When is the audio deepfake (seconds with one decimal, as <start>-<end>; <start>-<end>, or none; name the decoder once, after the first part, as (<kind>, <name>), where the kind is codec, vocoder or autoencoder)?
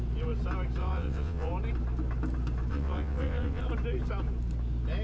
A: 0.8-1.5 (vocoder, WaveNeXt); 2.7-3.6